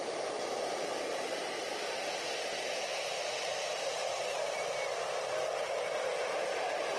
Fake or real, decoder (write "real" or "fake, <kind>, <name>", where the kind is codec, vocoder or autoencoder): real